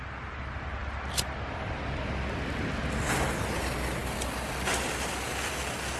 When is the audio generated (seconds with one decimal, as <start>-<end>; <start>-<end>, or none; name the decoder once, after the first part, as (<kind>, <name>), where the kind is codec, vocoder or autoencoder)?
none